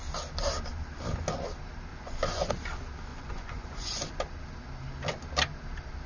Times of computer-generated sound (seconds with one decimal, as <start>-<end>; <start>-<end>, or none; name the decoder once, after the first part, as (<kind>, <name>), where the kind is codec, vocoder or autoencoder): 1.9-2.5 (vocoder, Vocos); 3.1-4.0